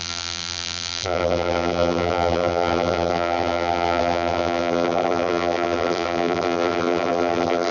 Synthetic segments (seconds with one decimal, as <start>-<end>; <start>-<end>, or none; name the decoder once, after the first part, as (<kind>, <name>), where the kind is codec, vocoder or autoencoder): 0.0-7.7 (vocoder, BigVGAN v2)